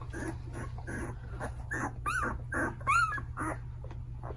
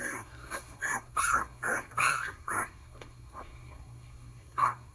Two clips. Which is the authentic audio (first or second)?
first